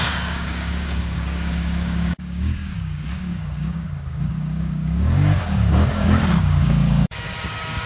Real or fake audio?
fake